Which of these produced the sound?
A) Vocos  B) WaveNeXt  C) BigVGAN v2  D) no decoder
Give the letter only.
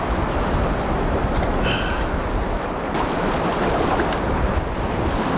D